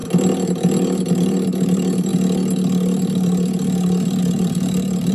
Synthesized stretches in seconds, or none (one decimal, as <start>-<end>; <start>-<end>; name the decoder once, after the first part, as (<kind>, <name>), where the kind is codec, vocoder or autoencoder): 1.1-2.1 (vocoder, BigVGAN v2); 4.2-5.1